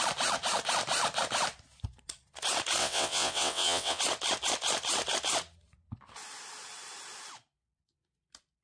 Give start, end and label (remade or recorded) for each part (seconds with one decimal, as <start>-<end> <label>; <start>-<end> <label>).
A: 0.0-2.8 recorded; 2.8-4.0 remade; 4.0-8.6 recorded